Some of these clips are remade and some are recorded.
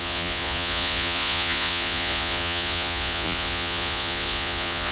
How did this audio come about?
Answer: remade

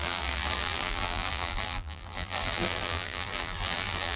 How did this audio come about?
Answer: remade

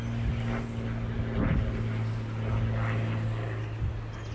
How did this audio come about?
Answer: recorded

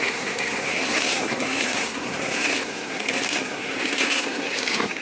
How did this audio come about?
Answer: remade